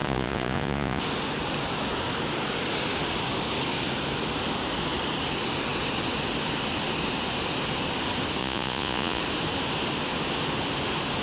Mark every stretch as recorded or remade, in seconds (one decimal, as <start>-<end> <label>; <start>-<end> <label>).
0.0-1.0 remade; 1.0-8.4 recorded; 8.4-9.2 remade; 9.2-11.2 recorded